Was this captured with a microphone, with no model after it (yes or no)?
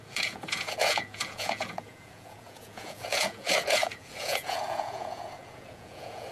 no